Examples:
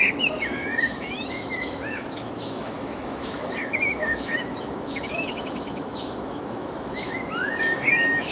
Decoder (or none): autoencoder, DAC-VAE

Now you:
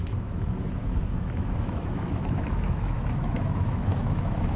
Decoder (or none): autoencoder, DAC-VAE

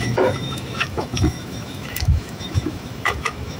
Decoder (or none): autoencoder, DAC-VAE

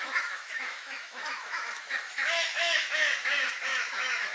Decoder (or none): autoencoder, DAC-VAE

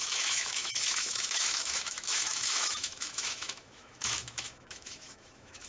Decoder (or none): autoencoder, DAC-VAE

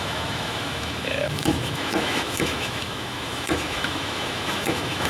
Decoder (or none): autoencoder, DAC-VAE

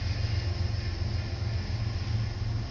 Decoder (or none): none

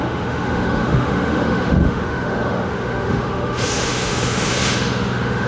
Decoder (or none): autoencoder, DAC-VAE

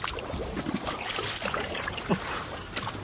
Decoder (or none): none